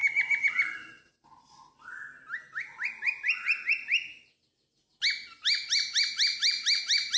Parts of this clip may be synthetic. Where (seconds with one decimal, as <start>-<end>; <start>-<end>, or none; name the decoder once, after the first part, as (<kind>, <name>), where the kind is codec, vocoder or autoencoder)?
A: none